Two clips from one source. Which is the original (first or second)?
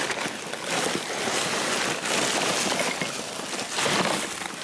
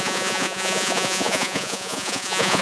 first